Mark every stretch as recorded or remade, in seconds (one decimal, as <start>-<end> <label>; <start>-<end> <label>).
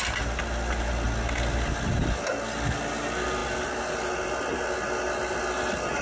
0.0-6.0 recorded